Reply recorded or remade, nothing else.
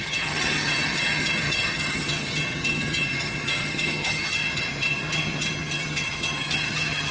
remade